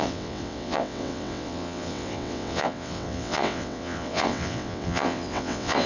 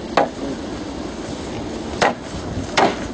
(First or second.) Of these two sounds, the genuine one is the second